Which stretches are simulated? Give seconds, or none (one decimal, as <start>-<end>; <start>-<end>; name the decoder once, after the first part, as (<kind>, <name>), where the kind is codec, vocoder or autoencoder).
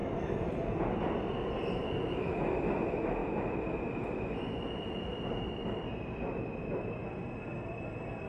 none